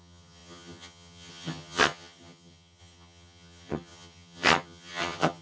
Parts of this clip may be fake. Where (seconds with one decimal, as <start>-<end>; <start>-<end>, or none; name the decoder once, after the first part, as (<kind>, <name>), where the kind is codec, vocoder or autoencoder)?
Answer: 0.0-5.4 (vocoder, HiFi-GAN)